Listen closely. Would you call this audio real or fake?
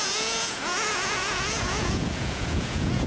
fake